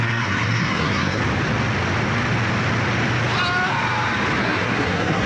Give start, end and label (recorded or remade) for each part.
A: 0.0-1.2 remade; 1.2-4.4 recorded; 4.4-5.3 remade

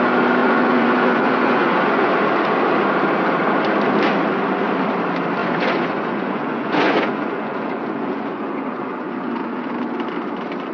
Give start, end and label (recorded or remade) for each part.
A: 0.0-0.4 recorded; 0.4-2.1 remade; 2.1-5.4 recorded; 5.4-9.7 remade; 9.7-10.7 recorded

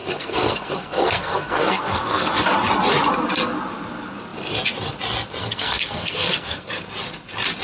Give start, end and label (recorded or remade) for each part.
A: 0.0-2.3 remade; 2.3-5.4 recorded; 5.4-6.7 remade; 6.7-7.6 recorded

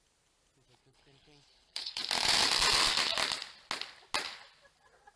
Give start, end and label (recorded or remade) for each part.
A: 0.0-0.8 recorded; 0.8-2.0 remade; 2.0-5.2 recorded